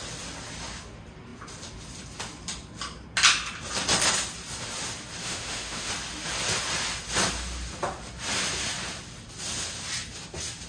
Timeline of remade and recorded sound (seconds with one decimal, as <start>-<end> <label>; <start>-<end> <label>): 0.0-5.2 recorded; 5.2-5.9 remade; 5.9-10.7 recorded